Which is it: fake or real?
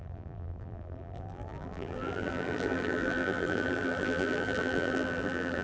fake